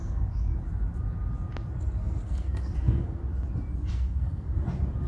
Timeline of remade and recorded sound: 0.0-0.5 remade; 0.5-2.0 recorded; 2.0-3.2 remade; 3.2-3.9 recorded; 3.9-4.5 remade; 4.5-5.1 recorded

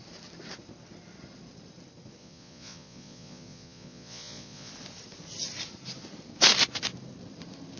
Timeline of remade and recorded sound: 0.0-2.2 recorded; 2.2-4.7 remade; 4.7-7.8 recorded

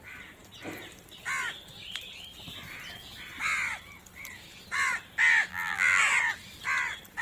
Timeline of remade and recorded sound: 0.0-5.5 recorded; 5.5-6.0 remade; 6.0-7.2 recorded

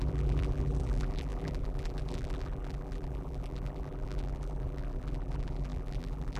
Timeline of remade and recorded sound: 0.0-6.4 remade